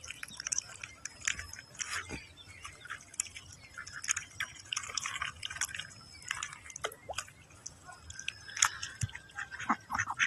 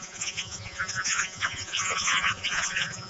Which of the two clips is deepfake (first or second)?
second